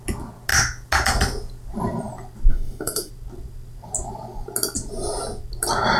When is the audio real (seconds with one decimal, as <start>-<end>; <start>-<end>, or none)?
0.0-2.5; 3.1-6.0